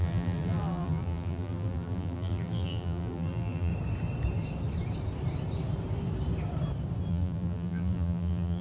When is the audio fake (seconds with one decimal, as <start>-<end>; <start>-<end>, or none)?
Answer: 0.0-3.7; 7.1-8.6